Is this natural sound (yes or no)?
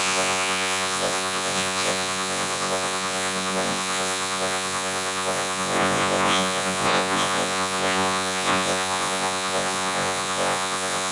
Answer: no